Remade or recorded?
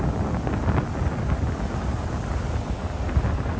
recorded